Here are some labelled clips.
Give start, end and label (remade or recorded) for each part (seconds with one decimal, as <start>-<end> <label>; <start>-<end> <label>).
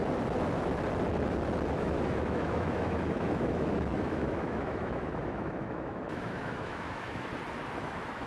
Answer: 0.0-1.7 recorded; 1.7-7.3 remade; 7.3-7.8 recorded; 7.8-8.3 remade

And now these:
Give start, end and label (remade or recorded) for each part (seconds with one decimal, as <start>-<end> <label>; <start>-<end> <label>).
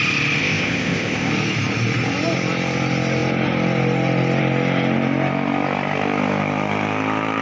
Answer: 0.0-0.4 recorded; 0.4-1.3 remade; 1.3-7.4 recorded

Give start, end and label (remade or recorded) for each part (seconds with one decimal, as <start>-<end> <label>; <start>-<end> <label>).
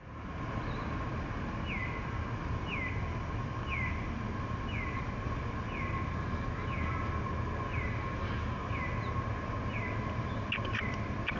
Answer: 0.0-11.4 recorded